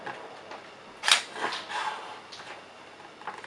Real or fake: real